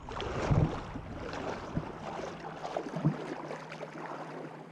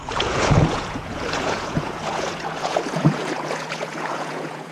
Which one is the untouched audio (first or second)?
first